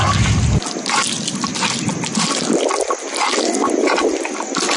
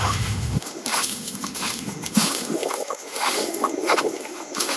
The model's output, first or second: second